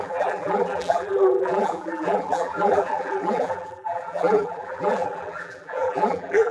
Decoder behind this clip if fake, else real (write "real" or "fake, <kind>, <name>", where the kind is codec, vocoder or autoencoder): fake, vocoder, BigVGAN v2